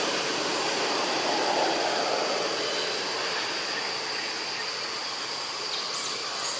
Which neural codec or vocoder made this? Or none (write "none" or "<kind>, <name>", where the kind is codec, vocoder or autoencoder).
none